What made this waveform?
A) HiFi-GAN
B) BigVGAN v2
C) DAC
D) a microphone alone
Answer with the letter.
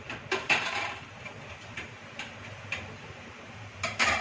B